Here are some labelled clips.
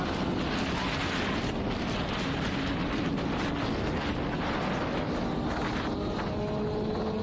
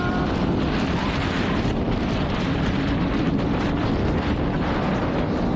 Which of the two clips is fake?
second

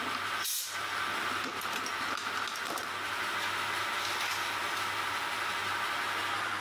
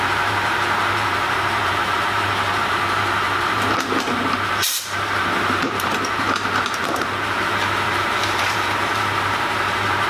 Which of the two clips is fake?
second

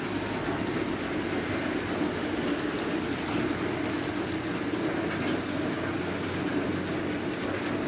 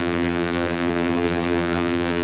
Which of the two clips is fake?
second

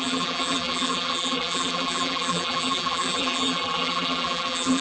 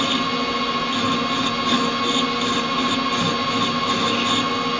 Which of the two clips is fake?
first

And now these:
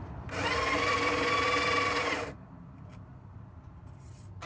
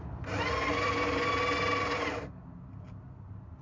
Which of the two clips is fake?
first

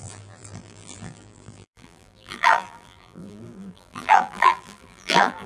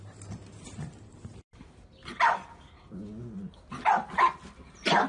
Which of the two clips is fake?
first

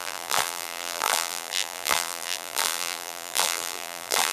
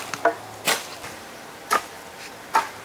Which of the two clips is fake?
first